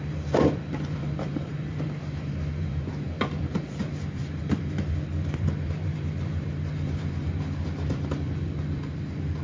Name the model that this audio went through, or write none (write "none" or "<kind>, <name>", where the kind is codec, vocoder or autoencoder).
vocoder, BigVGAN v2